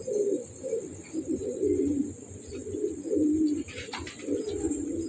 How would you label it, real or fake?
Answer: real